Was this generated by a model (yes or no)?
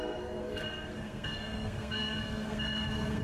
yes